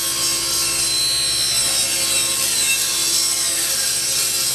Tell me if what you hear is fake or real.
real